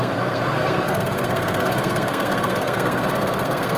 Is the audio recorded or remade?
remade